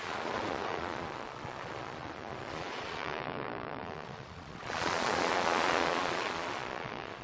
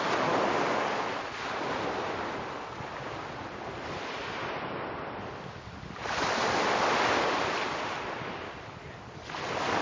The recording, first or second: second